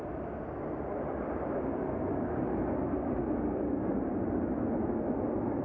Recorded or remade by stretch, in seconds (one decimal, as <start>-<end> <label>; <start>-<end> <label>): 0.0-5.6 recorded